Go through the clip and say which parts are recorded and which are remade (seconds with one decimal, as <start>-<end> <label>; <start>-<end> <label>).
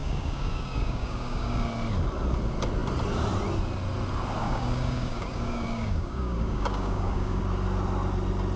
0.0-1.7 remade; 1.7-4.4 recorded; 4.4-7.4 remade; 7.4-8.6 recorded